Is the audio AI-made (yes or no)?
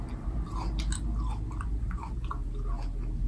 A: no